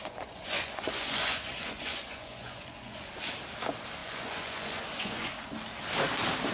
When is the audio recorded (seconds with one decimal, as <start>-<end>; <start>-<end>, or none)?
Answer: 3.1-4.0; 5.3-6.5